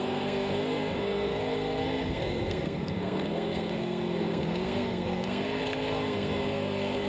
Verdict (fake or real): fake